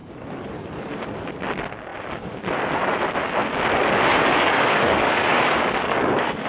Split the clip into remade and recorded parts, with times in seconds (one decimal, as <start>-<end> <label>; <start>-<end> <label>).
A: 0.0-0.9 remade; 0.9-4.1 recorded; 4.1-6.5 remade